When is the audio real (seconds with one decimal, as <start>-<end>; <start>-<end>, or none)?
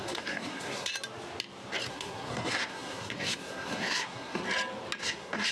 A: 0.9-1.9; 4.4-5.0